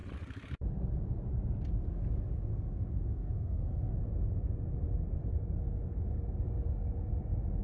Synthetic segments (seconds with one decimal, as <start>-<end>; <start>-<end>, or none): 2.5-4.0